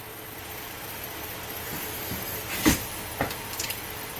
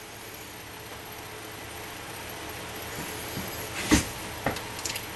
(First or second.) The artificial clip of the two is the first